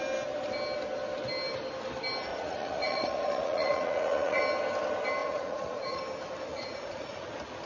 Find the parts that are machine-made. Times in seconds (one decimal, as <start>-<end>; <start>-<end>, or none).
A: 2.3-4.4; 5.2-6.0; 6.5-7.3